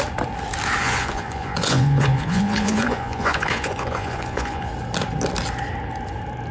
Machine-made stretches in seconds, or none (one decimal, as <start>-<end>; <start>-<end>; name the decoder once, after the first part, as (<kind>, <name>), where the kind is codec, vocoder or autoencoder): 0.8-4.7 (vocoder, Vocos)

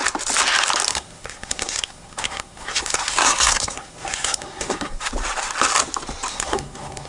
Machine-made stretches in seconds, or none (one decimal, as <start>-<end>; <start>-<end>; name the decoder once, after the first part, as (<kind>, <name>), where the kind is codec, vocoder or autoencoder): 0.9-5.1 (codec, SNAC); 6.3-7.1

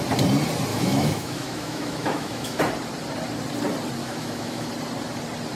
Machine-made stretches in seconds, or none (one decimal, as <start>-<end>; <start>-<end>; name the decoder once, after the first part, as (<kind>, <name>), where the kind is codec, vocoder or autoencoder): 0.7-2.6 (autoencoder, DAC-VAE); 4.0-4.7

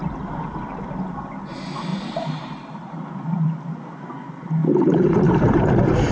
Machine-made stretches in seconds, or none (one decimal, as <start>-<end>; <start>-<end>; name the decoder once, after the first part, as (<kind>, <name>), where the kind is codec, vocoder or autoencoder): 1.9-3.1 (vocoder, BigVGAN v2); 4.6-6.1